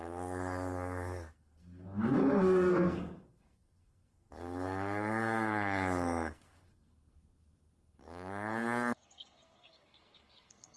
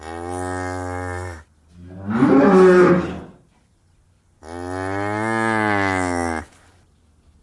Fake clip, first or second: first